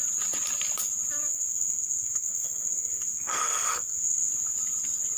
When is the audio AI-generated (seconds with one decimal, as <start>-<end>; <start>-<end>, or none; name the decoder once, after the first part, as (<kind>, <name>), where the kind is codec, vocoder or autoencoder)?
1.3-4.3 (codec, SNAC)